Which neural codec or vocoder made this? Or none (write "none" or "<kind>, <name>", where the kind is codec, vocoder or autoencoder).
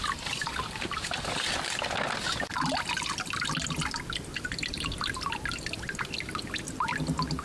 none